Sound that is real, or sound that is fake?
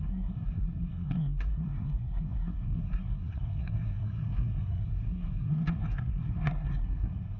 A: fake